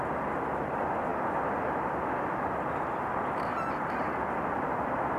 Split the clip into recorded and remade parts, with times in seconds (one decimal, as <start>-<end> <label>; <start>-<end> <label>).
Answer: 0.0-5.2 recorded